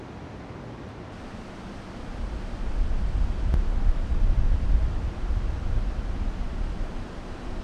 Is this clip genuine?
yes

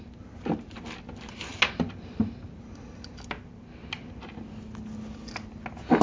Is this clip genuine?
yes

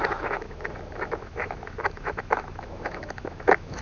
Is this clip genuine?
no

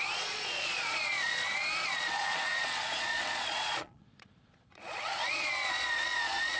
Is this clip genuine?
no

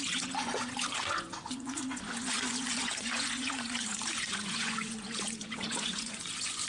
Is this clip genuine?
no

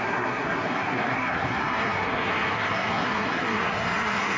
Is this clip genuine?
no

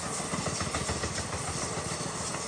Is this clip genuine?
yes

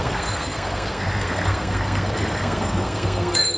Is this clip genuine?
no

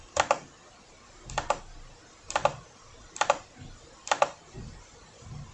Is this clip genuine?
yes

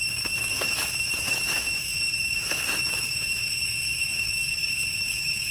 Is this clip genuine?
no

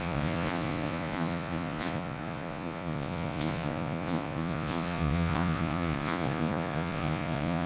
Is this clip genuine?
no